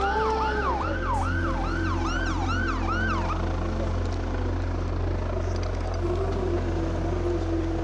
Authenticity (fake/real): real